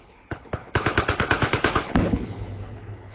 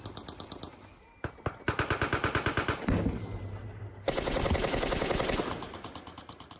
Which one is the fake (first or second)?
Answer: first